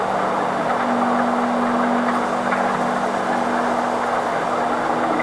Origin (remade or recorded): recorded